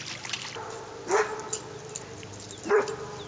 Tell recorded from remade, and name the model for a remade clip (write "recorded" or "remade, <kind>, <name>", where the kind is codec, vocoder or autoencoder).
recorded